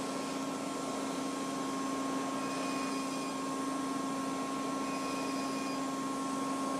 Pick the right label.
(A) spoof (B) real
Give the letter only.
B